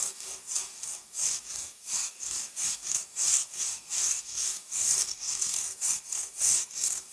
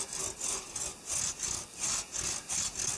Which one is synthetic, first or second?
first